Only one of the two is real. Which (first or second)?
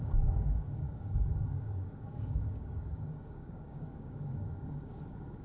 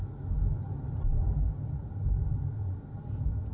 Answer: second